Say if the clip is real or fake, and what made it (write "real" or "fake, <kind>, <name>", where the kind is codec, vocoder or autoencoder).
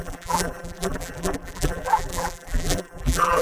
fake, vocoder, BigVGAN v2